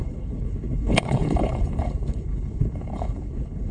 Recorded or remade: remade